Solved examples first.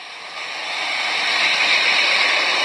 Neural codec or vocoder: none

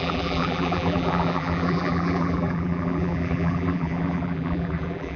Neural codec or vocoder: vocoder, BigVGAN v2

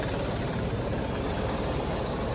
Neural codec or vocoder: vocoder, BigVGAN v2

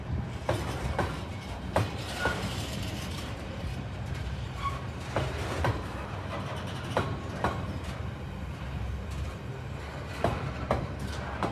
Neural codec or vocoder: vocoder, BigVGAN v2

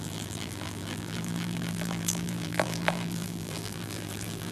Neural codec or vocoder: vocoder, BigVGAN v2